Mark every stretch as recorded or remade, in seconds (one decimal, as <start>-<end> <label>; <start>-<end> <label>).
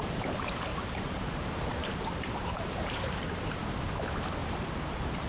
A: 0.0-0.7 recorded; 0.7-3.9 remade; 3.9-4.4 recorded; 4.4-5.3 remade